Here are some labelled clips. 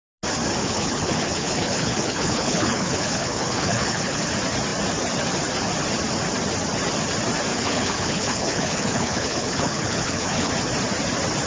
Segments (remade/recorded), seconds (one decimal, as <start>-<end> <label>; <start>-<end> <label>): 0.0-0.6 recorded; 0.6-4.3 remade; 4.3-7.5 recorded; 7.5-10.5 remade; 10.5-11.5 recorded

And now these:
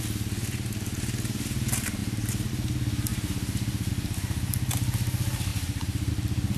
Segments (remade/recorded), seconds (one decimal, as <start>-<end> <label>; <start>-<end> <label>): 0.0-2.0 recorded; 2.0-2.5 remade; 2.5-5.5 recorded; 5.5-6.1 remade; 6.1-6.6 recorded

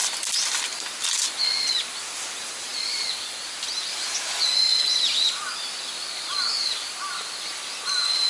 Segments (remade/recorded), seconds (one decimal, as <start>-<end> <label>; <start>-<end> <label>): 0.0-8.3 recorded

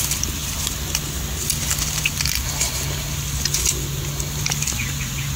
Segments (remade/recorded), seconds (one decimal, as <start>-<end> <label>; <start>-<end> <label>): 0.0-5.4 recorded

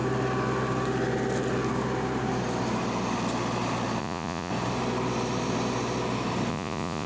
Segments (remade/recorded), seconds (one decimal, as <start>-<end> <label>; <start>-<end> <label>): 0.0-4.0 recorded; 4.0-4.5 remade; 4.5-6.5 recorded; 6.5-7.1 remade

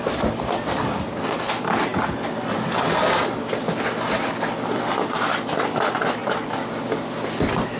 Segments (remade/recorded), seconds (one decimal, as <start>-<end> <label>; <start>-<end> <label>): 0.0-6.2 recorded; 6.2-7.1 remade; 7.1-7.8 recorded